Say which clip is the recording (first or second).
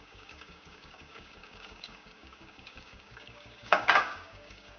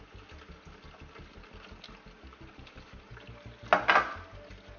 second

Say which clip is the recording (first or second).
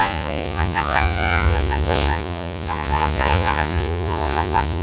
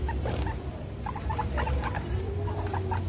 second